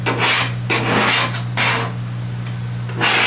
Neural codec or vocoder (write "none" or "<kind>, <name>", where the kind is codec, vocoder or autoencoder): none